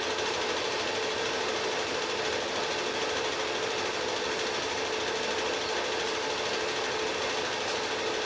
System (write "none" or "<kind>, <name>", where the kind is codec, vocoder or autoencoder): none